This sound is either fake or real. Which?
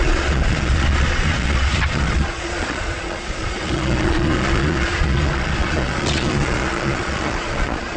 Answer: fake